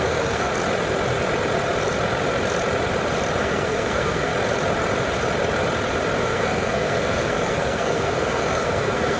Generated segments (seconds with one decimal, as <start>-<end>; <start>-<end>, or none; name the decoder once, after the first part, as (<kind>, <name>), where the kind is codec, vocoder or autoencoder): 0.0-0.5 (codec, SNAC); 3.4-4.3; 6.2-9.2